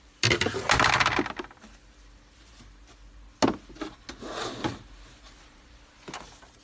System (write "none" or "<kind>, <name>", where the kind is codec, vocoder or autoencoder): none